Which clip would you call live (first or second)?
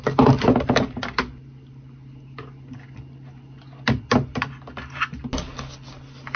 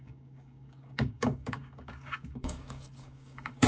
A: first